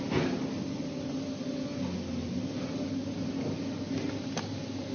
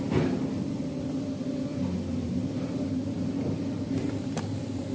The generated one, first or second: second